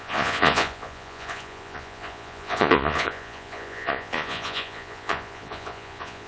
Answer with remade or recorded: remade